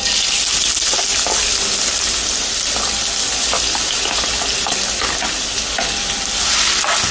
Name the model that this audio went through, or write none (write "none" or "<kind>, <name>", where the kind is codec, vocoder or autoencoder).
none